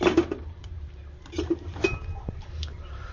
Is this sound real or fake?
fake